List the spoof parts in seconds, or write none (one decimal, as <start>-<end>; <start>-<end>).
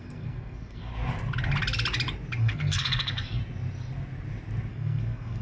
0.0-0.9; 2.4-3.4; 4.7-5.4